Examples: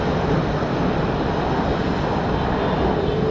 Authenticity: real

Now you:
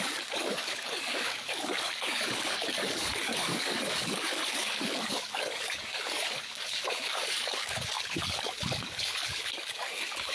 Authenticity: fake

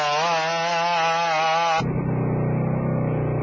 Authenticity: real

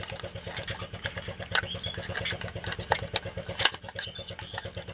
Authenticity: real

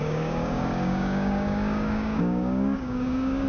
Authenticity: fake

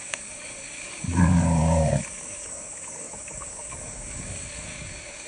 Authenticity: fake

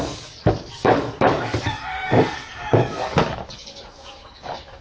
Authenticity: fake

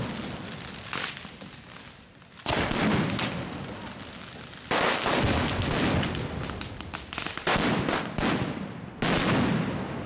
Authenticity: real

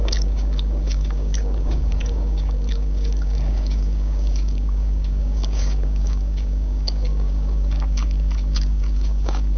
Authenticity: fake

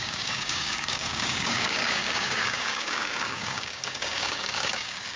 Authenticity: fake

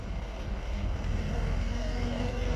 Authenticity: fake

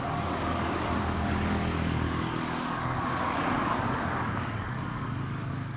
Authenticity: fake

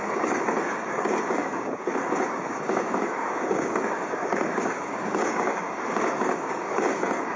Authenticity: fake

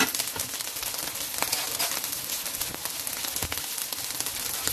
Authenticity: real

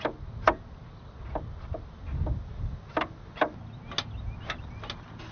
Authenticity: real